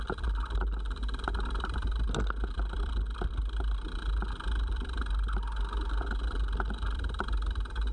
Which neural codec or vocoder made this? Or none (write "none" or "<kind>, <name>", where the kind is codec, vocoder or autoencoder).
none